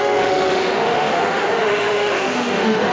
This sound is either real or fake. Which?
fake